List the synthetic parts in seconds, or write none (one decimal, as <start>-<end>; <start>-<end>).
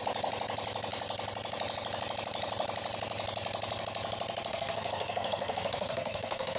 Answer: 4.5-6.6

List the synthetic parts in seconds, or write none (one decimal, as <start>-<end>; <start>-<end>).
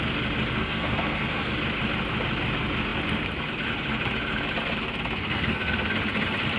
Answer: 0.6-1.5; 5.2-5.9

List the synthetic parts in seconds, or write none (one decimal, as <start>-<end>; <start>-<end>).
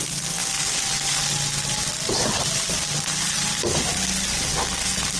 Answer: none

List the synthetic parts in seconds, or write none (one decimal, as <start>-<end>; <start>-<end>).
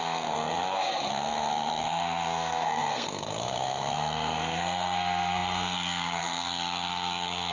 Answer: 0.0-7.5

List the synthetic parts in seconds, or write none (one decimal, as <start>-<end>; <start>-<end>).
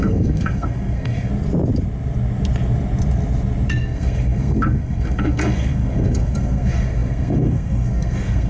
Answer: 0.0-1.3; 3.7-8.5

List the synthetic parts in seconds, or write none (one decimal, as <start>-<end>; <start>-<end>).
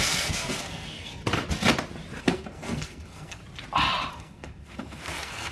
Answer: 0.0-1.2; 2.2-3.4; 4.1-5.5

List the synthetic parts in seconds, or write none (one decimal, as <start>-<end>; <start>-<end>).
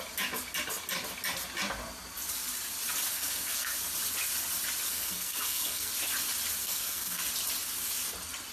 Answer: 3.1-3.8; 4.9-5.9; 6.6-7.2